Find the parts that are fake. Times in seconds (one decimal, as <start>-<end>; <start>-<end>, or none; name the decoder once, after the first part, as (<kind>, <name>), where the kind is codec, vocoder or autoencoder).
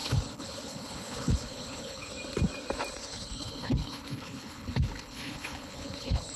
0.0-2.1 (codec, HILCodec); 3.0-6.4